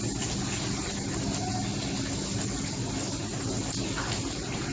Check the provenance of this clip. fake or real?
real